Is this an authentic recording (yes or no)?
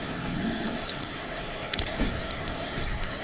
no